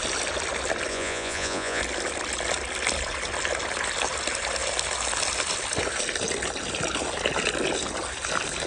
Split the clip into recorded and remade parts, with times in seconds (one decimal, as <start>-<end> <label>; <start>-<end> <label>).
0.0-0.9 recorded; 0.9-1.8 remade; 1.8-8.7 recorded